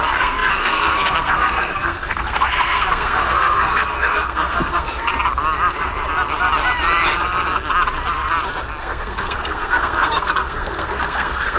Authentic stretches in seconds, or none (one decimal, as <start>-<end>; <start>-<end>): 5.1-8.8